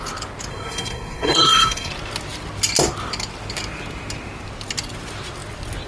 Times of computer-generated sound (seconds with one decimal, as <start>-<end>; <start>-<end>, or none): 0.5-1.9